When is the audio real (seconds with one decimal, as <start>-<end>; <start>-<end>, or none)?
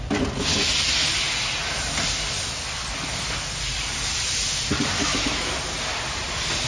0.0-5.0; 5.5-6.7